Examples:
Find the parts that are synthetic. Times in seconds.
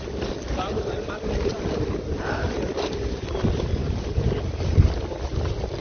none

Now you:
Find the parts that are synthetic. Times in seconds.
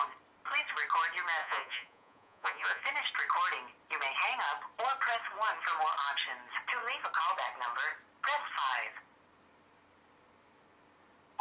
1.4-2.8 (vocoder, Vocos)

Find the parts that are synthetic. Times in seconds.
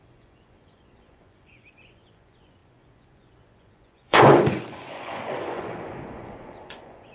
0.0-7.1 (vocoder, Vocos)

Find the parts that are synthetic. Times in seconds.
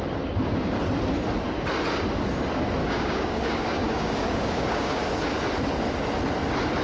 2.8-5.1 (codec, DAC)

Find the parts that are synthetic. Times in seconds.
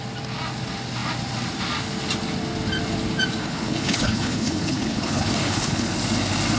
3.4-5.9 (codec, HILCodec)